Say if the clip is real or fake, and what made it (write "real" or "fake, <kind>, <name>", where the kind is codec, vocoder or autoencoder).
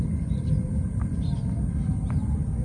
real